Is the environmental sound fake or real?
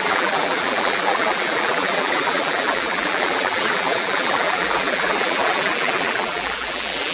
fake